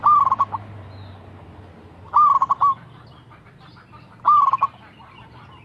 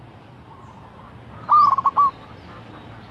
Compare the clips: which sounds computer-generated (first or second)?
second